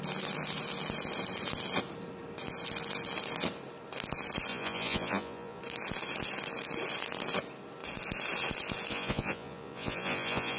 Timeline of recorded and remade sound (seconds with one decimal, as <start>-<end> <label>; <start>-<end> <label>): 0.0-4.5 recorded; 4.5-5.6 remade; 5.6-8.9 recorded; 8.9-10.6 remade